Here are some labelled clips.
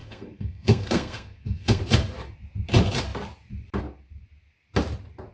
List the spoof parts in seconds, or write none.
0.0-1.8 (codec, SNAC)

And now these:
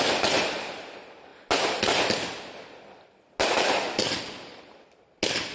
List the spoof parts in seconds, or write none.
none